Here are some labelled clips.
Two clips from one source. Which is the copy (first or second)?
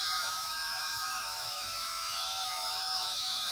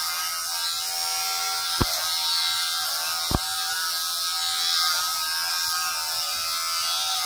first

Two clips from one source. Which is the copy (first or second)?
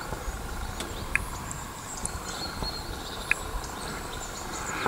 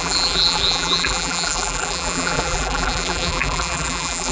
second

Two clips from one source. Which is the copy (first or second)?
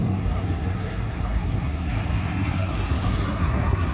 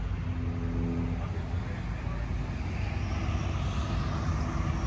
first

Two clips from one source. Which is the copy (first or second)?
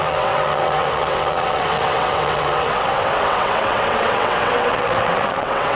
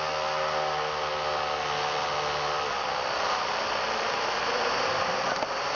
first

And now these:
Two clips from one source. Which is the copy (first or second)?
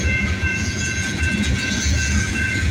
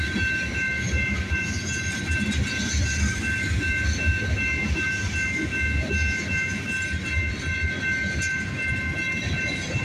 first